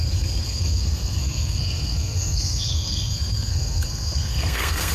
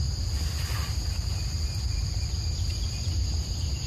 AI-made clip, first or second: first